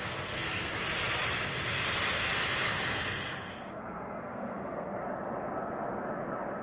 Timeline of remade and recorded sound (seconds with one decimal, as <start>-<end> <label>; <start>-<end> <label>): 0.0-0.7 remade; 0.7-3.7 recorded; 3.7-5.0 remade; 5.0-6.6 recorded